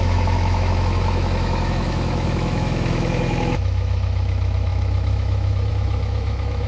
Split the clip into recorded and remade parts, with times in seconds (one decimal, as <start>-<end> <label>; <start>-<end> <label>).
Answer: 0.0-6.7 remade